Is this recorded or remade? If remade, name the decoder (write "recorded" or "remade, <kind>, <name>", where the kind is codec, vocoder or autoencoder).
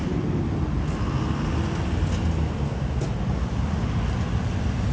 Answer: recorded